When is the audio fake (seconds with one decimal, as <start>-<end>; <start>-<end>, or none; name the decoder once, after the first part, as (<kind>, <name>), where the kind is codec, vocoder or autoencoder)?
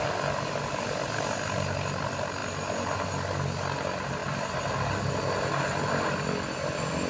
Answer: none